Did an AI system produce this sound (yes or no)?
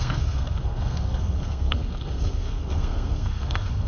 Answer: yes